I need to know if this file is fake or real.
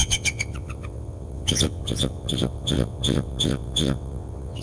fake